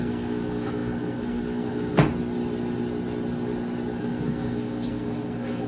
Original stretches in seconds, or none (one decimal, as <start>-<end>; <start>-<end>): 2.0-4.0